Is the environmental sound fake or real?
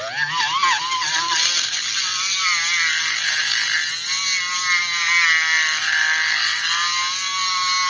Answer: real